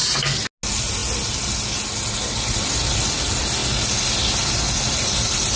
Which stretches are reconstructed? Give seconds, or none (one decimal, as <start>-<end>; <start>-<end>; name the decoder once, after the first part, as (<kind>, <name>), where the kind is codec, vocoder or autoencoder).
none